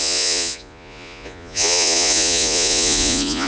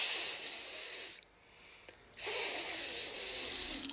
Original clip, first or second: second